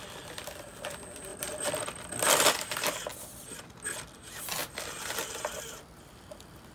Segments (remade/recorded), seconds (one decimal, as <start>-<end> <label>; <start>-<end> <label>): 0.0-1.3 recorded; 1.3-2.3 remade; 2.3-3.1 recorded; 3.1-3.6 remade; 3.6-4.6 recorded; 4.6-6.7 remade